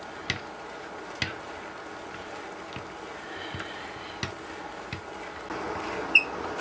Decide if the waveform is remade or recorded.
recorded